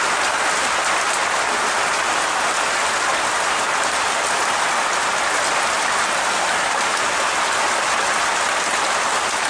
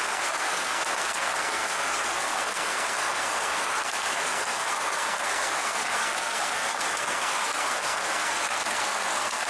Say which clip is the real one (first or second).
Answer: first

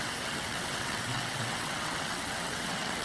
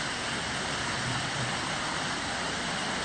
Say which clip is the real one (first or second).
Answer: second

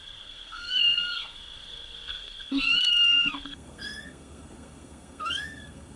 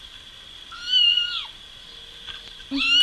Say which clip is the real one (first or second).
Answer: second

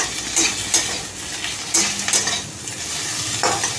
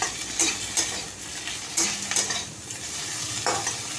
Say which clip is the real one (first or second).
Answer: first